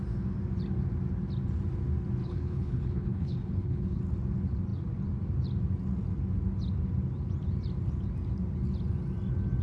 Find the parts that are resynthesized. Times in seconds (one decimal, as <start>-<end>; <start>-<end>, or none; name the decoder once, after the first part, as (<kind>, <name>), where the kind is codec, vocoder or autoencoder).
2.2-4.0 (codec, HILCodec)